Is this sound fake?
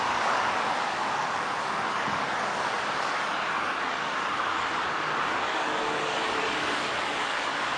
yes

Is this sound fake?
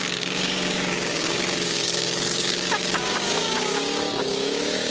yes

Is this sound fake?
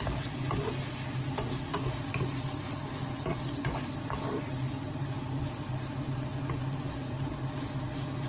no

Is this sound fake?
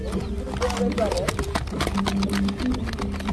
no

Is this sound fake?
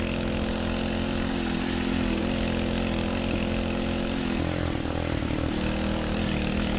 no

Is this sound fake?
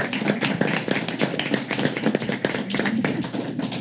no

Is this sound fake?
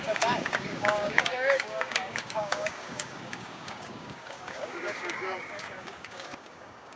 yes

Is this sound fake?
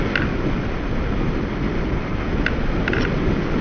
no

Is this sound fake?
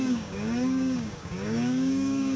yes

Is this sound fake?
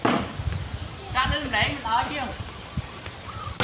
no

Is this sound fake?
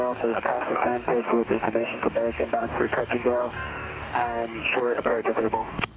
yes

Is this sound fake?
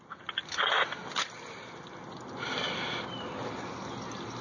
no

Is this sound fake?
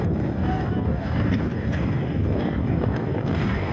yes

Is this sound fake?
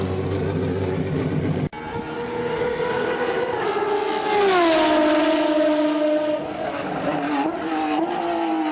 no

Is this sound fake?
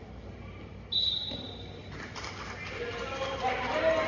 no